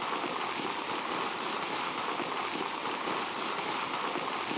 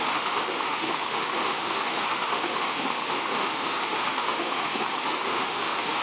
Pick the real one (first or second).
first